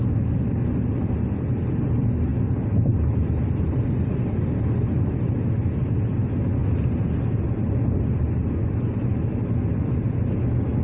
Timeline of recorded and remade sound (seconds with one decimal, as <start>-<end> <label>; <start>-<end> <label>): 0.0-10.8 recorded